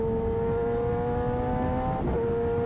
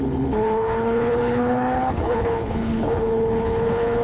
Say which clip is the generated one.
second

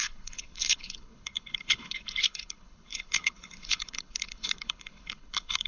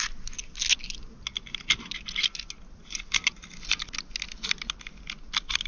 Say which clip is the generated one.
first